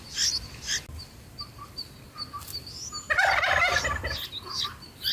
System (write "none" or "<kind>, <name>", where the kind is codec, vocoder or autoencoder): none